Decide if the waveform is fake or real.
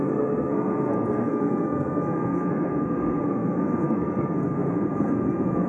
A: fake